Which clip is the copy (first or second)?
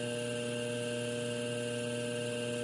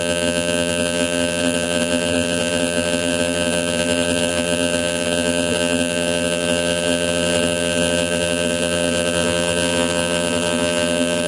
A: second